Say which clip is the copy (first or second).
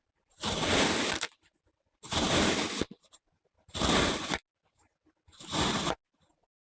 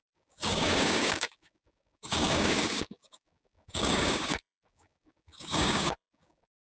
second